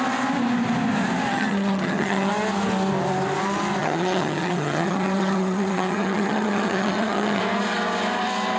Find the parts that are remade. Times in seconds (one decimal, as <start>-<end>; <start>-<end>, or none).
1.3-2.3; 3.8-7.4